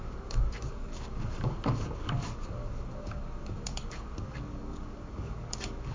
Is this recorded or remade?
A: remade